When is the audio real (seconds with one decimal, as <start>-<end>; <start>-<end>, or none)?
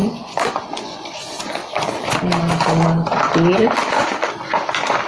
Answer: 1.6-5.1